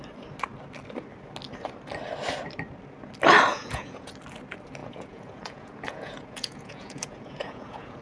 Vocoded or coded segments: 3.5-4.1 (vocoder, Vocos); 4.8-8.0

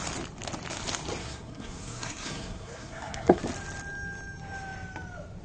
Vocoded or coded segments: 1.2-3.4 (codec, SNAC)

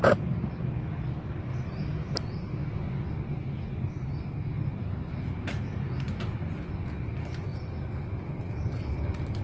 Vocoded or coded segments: none

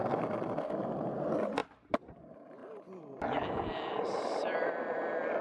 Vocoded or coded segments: 1.6-2.2 (vocoder, BigVGAN v2); 2.6-5.0

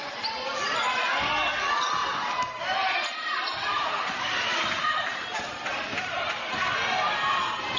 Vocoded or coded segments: 2.0-6.4 (vocoder, BigVGAN v2)